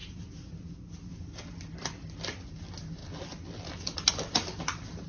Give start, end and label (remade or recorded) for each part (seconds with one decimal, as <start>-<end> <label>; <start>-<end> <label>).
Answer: 0.0-5.1 recorded